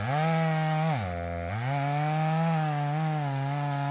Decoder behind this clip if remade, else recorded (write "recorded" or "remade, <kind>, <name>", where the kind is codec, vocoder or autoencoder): recorded